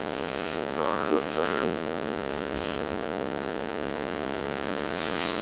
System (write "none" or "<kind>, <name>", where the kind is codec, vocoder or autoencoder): vocoder, Vocos